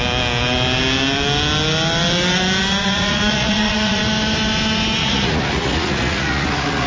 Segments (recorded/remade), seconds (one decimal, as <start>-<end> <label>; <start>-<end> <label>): 0.0-2.8 recorded; 2.8-4.0 remade; 4.0-5.0 recorded; 5.0-6.9 remade